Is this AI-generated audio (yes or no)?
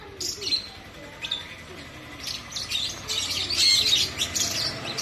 no